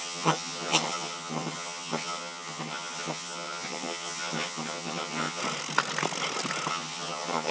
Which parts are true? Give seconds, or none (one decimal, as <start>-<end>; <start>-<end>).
5.4-6.7